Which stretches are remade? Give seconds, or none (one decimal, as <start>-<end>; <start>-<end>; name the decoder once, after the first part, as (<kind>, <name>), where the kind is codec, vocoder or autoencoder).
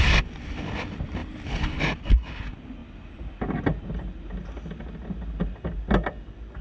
1.2-1.8 (vocoder, BigVGAN v2); 2.8-3.6